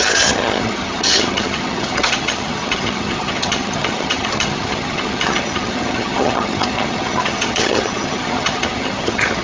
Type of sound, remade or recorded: remade